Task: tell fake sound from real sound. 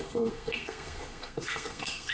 fake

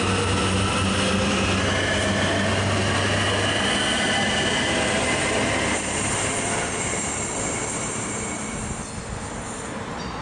real